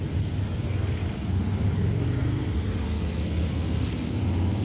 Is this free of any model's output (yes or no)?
yes